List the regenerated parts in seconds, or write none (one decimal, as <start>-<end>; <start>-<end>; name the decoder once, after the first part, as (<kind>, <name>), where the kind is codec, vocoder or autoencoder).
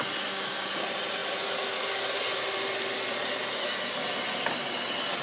none